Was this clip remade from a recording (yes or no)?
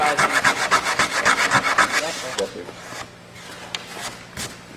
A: no